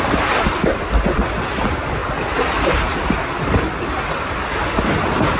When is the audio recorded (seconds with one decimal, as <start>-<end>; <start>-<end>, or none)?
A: 0.0-5.4